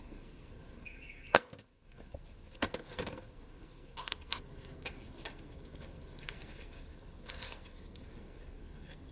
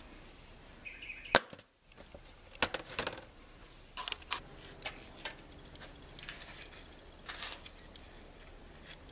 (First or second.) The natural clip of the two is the second